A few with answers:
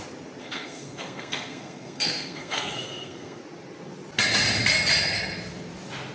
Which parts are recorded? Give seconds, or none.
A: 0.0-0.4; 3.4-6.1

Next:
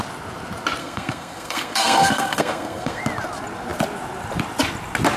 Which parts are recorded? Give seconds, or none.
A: 0.0-0.8; 3.0-5.2

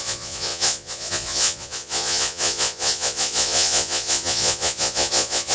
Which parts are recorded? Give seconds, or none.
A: none

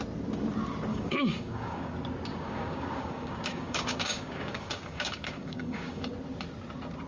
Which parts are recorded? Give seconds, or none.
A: 0.0-0.9; 1.9-2.3; 6.1-7.1

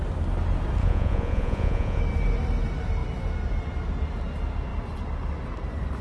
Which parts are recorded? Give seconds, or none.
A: 0.0-0.8; 2.0-6.0

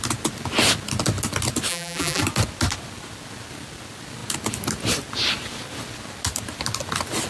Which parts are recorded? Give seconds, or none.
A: 0.0-1.7; 2.2-7.3

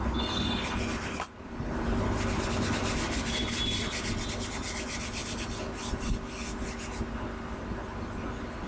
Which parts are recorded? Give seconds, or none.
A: 0.0-8.7